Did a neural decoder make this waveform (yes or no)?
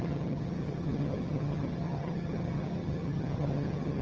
yes